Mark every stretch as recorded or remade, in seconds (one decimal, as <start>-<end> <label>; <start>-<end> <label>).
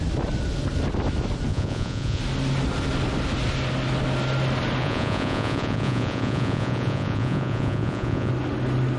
0.0-1.5 recorded; 1.5-2.2 remade; 2.2-4.8 recorded; 4.8-8.3 remade; 8.3-9.0 recorded